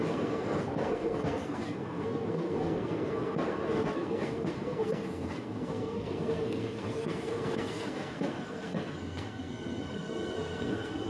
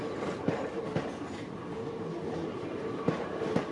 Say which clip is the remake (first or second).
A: first